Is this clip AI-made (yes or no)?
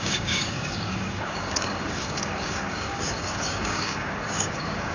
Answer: yes